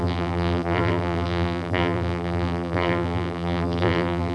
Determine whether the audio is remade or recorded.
remade